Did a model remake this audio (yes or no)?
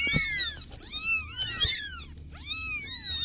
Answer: no